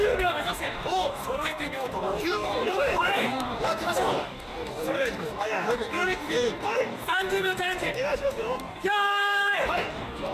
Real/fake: fake